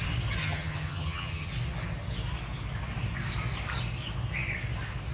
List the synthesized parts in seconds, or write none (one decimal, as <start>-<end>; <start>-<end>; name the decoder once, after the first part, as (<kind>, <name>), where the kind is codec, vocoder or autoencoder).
0.4-1.5 (vocoder, HiFi-GAN)